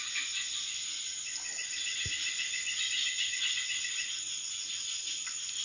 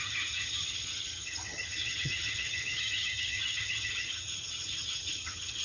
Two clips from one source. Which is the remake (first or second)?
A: second